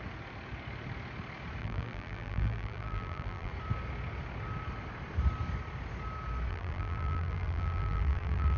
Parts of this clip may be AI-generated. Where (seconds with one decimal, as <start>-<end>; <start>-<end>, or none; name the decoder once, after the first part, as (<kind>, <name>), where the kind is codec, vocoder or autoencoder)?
1.6-3.5 (vocoder, BigVGAN v2); 6.5-8.6